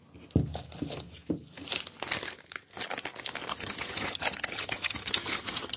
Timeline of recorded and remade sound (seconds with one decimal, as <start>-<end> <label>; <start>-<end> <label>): 0.0-3.5 recorded; 3.5-5.8 remade